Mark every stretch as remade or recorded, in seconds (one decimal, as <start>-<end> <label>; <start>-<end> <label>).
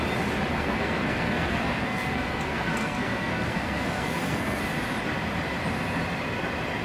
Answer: 0.0-0.5 recorded; 0.5-4.6 remade; 4.6-6.8 recorded